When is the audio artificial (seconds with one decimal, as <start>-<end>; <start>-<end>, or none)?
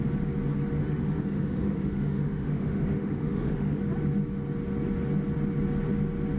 0.8-3.8